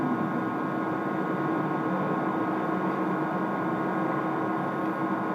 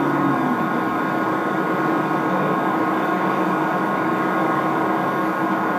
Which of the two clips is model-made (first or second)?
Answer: second